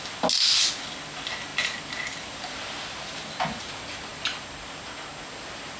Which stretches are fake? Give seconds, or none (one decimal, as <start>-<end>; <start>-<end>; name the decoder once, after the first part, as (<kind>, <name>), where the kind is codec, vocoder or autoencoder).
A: none